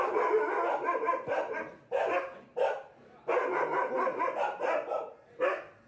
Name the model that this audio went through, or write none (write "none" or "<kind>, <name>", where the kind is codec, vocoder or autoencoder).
none